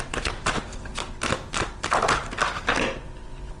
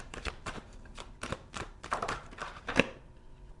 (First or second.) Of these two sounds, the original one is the first